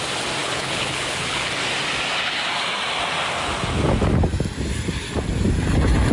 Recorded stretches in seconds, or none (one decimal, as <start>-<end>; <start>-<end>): 0.0-0.4; 1.5-6.1